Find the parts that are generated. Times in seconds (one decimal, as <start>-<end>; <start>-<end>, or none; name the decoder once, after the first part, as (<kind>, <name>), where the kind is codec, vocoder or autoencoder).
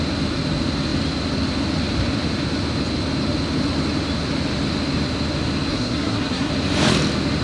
5.7-6.5 (codec, SNAC)